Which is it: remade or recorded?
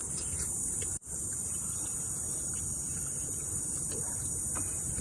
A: remade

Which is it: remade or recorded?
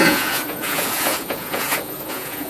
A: remade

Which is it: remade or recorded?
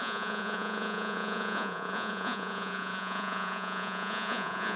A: remade